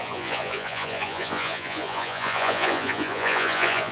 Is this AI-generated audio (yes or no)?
yes